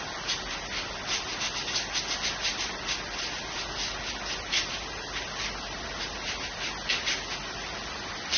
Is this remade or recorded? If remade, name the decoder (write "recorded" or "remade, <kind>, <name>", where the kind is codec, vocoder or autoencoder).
recorded